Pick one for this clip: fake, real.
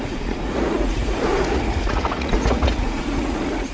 fake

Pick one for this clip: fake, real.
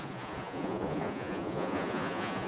fake